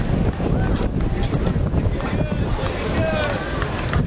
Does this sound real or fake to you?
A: real